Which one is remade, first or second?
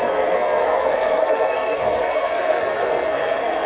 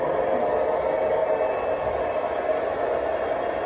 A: first